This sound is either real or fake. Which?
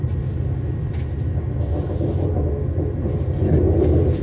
real